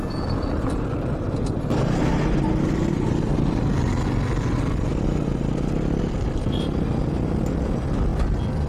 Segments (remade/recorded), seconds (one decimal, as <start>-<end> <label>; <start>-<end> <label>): 0.0-8.7 recorded